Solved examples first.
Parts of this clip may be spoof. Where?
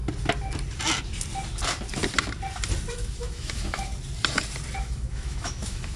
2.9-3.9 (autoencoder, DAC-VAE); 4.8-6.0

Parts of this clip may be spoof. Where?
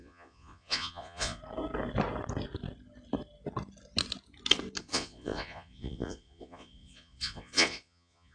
0.0-1.4 (vocoder, Vocos); 4.8-8.3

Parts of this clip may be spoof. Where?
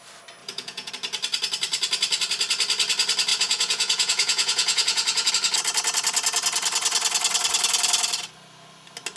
0.4-0.9 (vocoder, Vocos); 3.3-5.3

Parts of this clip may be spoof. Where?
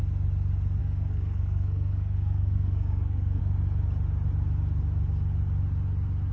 0.8-3.4 (codec, SNAC)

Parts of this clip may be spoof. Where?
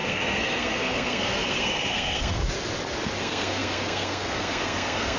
0.0-2.4 (codec, SNAC); 3.2-5.2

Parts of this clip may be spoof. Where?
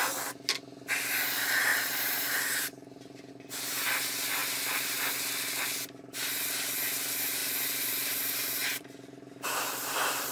1.7-3.3 (vocoder, BigVGAN v2); 4.4-5.0; 7.4-10.3